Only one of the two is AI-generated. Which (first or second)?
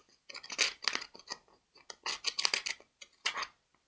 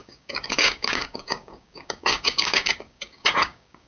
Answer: second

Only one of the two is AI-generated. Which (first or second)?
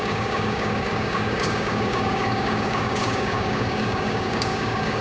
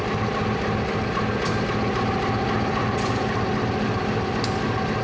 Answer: first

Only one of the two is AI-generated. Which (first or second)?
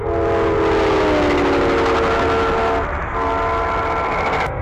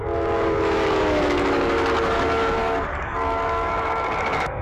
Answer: second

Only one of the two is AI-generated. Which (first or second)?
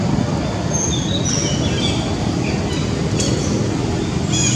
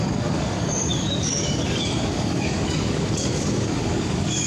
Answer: second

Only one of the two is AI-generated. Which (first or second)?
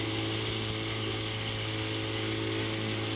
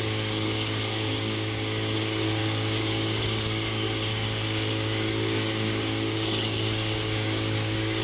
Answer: second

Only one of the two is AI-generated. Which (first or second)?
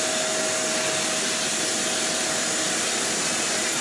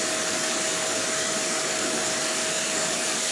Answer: second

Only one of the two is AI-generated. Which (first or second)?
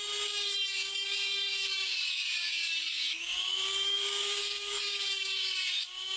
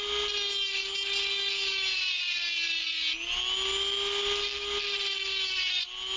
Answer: first